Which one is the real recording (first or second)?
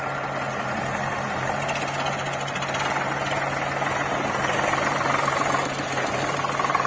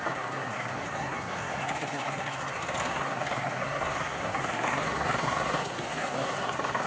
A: first